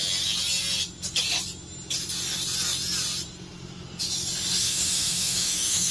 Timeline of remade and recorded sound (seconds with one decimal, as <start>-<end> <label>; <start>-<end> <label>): 0.0-4.6 recorded; 4.6-5.9 remade

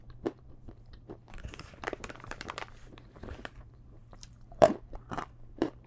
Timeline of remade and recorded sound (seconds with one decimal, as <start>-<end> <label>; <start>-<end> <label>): 0.0-5.9 remade

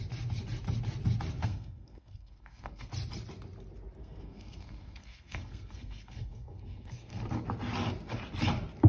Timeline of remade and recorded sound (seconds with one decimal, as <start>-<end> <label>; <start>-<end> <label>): 0.0-1.4 recorded; 1.4-2.9 remade; 2.9-4.0 recorded; 4.0-7.3 remade; 7.3-8.9 recorded

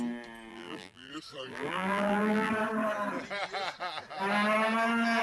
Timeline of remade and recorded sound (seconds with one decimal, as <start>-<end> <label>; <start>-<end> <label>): 0.0-0.5 recorded; 0.5-1.1 remade; 1.1-1.5 recorded; 1.5-2.5 remade; 2.5-5.2 recorded

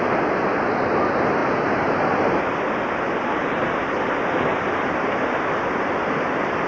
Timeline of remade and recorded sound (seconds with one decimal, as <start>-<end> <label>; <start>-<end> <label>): 0.0-6.7 recorded

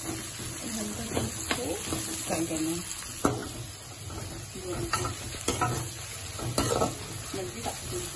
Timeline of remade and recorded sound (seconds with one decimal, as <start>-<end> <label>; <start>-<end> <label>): 0.0-8.2 recorded